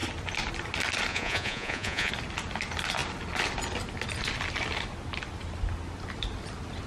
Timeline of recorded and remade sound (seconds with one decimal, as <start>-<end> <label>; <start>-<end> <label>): 0.0-1.1 recorded; 1.1-2.1 remade; 2.1-6.9 recorded